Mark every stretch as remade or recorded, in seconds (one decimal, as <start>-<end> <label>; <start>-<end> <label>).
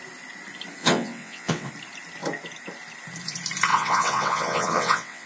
0.0-0.8 recorded; 0.8-1.7 remade; 1.7-3.7 recorded; 3.7-5.3 remade